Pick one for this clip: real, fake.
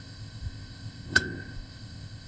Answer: fake